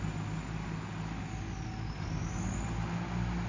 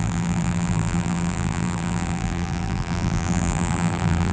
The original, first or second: first